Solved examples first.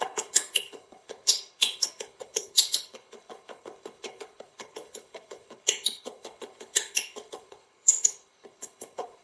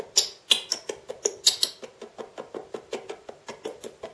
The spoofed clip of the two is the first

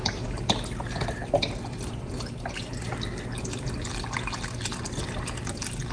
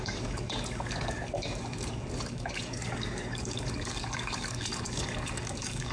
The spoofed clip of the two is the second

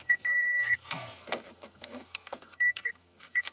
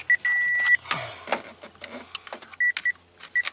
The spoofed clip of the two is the first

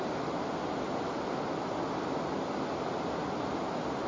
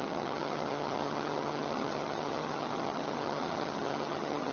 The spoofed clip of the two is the second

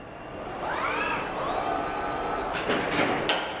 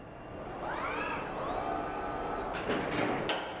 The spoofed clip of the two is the first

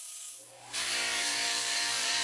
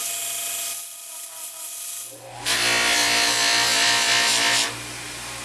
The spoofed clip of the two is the first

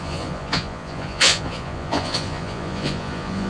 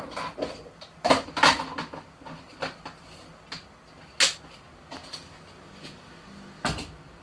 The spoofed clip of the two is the first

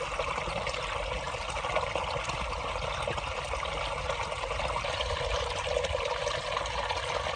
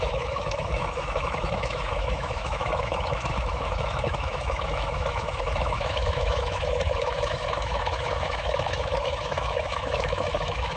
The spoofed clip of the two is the second